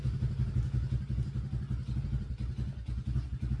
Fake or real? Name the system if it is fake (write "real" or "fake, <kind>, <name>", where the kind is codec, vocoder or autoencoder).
real